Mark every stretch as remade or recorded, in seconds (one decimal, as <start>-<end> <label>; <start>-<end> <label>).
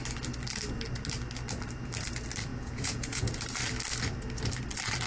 0.0-2.5 recorded; 2.5-3.3 remade; 3.3-5.1 recorded